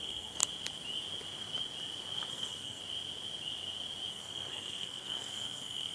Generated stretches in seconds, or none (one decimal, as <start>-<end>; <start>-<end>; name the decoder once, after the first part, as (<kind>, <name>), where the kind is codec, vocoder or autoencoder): 0.0-0.4 (codec, SNAC); 2.3-2.8; 4.1-5.9